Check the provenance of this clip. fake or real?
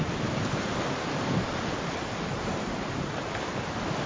real